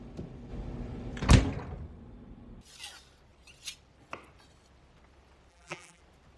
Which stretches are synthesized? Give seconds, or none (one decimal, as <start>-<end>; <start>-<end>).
5.5-6.0